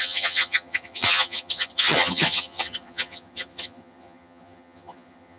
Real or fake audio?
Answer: fake